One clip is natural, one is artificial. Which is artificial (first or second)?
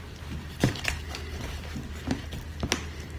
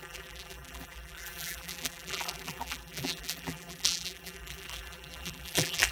second